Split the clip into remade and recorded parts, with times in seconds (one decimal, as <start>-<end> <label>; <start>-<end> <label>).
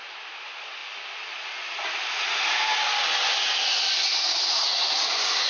0.0-5.5 recorded